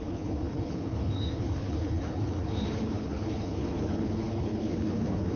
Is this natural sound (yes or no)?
no